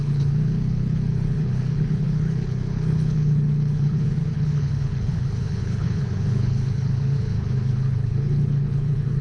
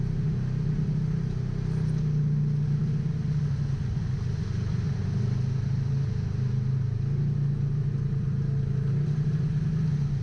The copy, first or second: first